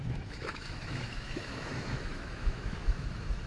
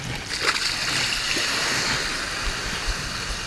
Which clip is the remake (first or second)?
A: first